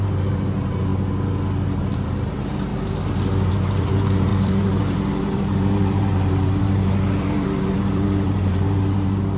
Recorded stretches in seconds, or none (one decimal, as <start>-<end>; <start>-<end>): 0.9-1.8; 2.7-3.5